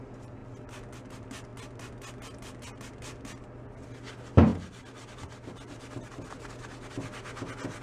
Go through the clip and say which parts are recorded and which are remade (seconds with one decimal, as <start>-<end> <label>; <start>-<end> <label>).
0.0-7.8 recorded